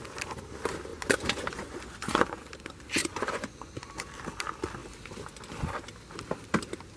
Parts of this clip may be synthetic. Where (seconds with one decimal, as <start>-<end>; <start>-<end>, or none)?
0.9-2.5; 3.0-3.9